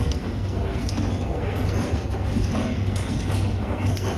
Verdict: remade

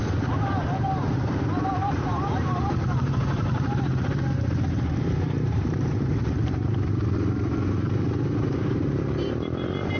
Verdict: remade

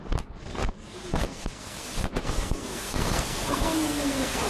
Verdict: remade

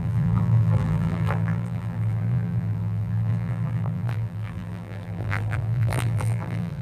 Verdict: remade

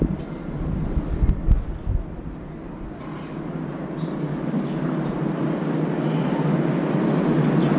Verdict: recorded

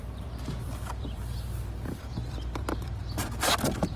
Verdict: remade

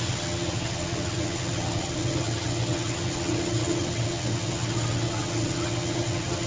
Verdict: remade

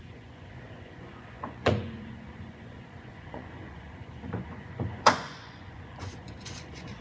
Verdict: remade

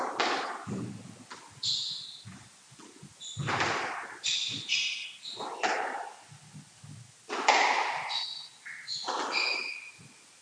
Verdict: recorded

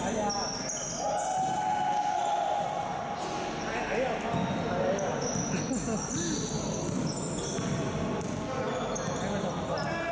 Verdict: recorded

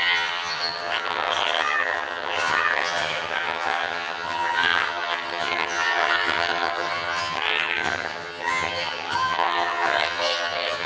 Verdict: remade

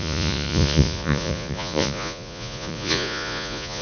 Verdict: remade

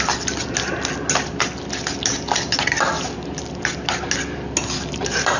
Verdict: recorded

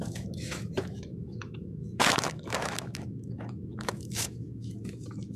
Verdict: remade